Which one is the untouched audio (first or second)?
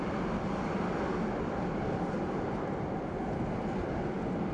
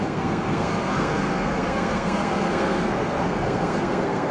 first